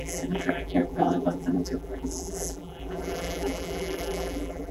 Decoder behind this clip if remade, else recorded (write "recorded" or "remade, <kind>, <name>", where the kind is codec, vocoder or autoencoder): remade, vocoder, BigVGAN v2